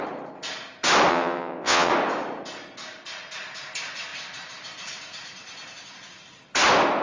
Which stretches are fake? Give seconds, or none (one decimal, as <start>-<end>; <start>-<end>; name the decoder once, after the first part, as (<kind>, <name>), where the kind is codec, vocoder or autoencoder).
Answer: 1.1-1.9 (vocoder, WaveNeXt)